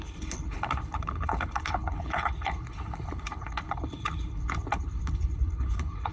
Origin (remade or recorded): remade